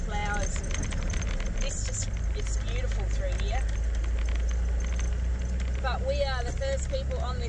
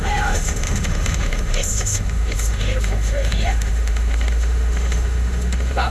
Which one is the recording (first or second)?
first